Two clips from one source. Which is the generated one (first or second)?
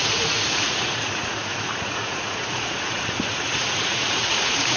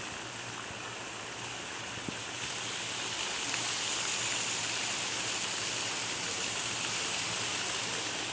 first